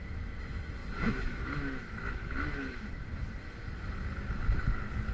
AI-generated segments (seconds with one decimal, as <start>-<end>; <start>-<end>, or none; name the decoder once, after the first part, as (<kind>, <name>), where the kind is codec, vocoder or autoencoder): 0.0-5.1 (autoencoder, DAC-VAE)